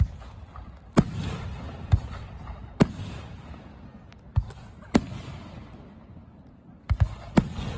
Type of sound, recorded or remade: recorded